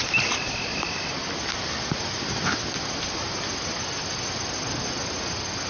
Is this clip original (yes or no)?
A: yes